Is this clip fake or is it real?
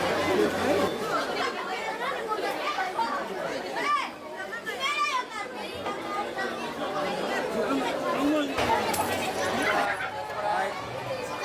real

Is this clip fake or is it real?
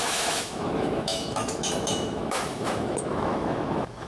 fake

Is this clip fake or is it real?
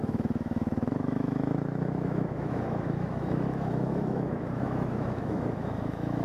fake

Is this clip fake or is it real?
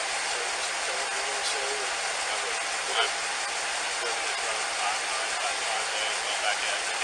real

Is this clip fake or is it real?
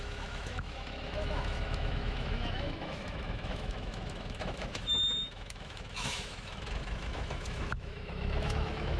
fake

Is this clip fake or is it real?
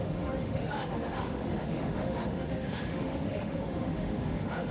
fake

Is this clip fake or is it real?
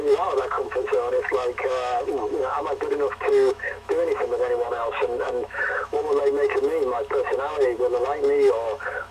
fake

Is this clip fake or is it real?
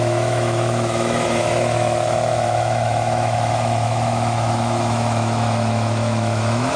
fake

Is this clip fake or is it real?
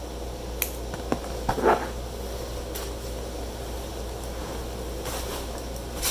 real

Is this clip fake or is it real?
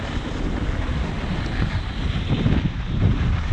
real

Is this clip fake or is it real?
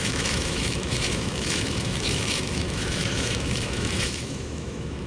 fake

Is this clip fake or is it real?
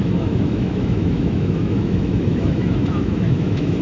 fake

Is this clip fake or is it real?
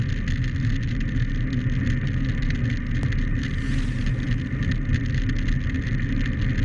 real